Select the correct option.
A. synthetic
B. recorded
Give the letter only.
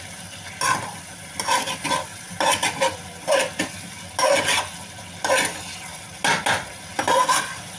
B